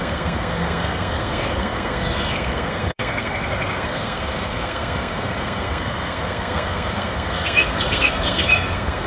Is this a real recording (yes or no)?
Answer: no